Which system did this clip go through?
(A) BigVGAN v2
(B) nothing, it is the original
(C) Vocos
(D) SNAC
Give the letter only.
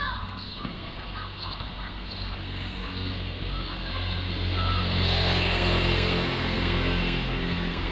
D